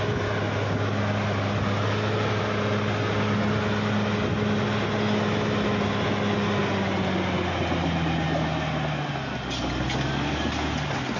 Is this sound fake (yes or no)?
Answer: no